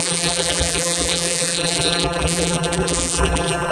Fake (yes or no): yes